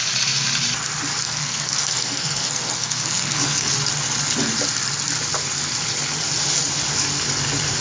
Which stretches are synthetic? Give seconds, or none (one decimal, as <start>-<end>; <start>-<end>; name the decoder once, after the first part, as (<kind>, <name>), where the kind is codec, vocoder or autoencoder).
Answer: 1.2-3.7 (codec, SNAC)